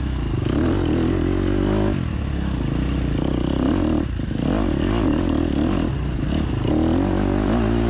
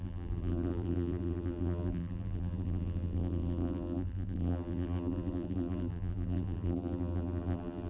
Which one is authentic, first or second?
first